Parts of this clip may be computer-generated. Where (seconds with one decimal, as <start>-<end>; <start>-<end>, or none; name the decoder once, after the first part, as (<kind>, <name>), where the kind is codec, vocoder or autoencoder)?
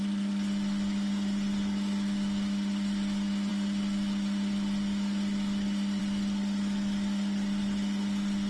none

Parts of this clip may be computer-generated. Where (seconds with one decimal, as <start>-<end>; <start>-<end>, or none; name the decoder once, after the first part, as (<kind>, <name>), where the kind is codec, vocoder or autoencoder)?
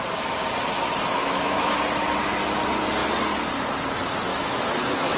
1.2-1.8 (autoencoder, DAC-VAE); 4.3-5.2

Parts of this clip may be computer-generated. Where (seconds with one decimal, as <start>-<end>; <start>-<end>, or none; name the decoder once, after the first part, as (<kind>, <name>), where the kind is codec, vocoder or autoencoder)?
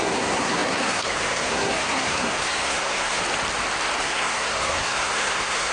0.0-3.2 (codec, SNAC); 4.0-5.7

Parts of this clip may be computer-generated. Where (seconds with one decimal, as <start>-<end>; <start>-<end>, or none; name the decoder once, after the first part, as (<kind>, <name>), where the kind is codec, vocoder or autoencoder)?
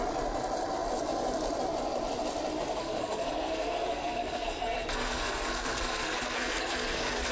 2.8-7.3 (codec, SNAC)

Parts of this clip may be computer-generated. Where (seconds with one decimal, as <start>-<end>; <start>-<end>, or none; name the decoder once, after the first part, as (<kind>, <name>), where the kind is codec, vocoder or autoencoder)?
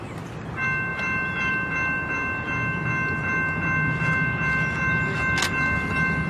none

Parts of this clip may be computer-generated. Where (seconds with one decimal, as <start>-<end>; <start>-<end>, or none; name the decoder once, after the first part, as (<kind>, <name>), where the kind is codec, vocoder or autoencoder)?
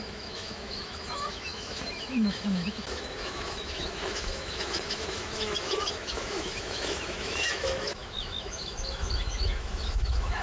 0.0-10.4 (autoencoder, DAC-VAE)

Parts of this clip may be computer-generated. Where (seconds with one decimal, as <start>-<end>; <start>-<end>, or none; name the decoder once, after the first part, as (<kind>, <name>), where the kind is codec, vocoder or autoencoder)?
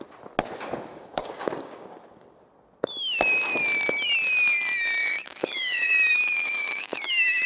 0.9-2.1 (codec, DAC); 5.0-7.1